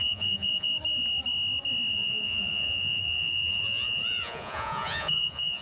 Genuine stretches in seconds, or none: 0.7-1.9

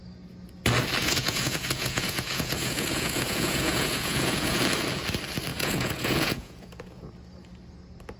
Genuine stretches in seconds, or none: 0.0-1.0; 4.6-5.5; 7.1-8.2

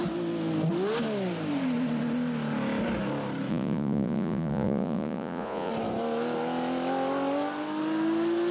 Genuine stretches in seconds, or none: 0.0-3.5; 5.7-8.5